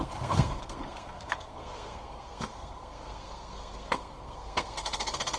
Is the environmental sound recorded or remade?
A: remade